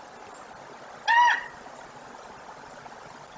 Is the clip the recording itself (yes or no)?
yes